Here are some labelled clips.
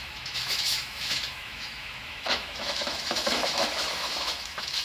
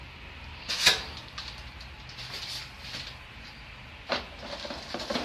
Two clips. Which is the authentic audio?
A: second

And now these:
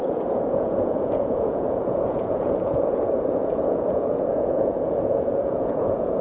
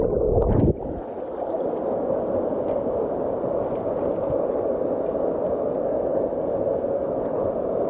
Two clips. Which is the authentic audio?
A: second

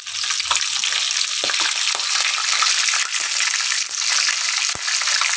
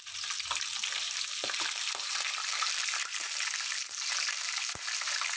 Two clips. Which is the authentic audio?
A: first